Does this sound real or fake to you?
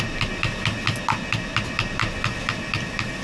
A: real